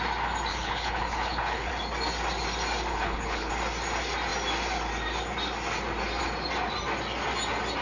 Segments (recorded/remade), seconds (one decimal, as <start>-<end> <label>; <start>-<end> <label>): 0.0-0.5 recorded; 0.5-1.7 remade; 1.7-2.9 recorded; 2.9-3.5 remade; 3.5-7.8 recorded